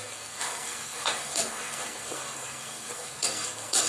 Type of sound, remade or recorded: remade